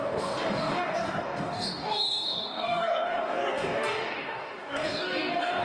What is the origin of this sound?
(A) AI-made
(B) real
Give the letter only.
A